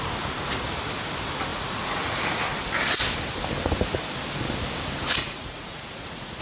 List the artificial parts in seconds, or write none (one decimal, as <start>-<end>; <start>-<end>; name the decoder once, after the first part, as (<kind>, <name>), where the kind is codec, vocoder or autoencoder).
1.5-2.2 (vocoder, Vocos); 5.2-6.4